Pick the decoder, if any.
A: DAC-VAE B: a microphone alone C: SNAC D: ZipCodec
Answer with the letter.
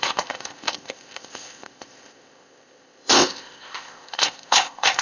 D